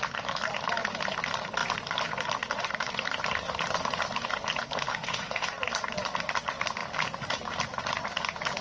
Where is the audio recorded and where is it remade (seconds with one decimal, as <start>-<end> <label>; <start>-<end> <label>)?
0.0-4.9 recorded; 4.9-5.5 remade; 5.5-8.6 recorded